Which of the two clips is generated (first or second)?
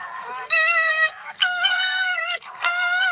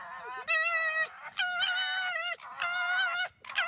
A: first